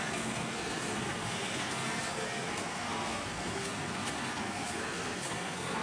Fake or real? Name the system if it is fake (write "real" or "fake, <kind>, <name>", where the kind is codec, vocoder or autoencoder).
fake, codec, SNAC